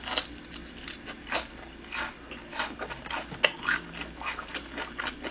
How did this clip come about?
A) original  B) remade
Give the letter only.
A